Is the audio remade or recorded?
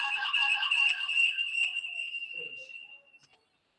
recorded